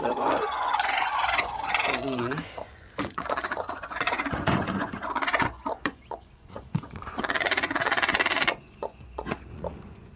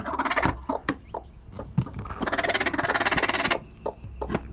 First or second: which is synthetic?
first